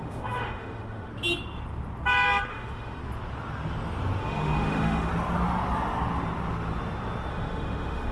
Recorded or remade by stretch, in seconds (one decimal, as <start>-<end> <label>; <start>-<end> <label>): 0.0-1.1 remade; 1.1-2.5 recorded; 2.5-3.0 remade; 3.0-4.2 recorded; 4.2-5.1 remade; 5.1-7.3 recorded; 7.3-8.1 remade